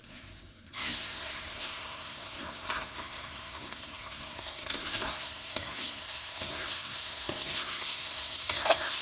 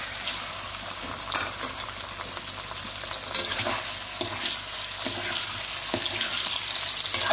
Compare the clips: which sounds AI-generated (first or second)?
first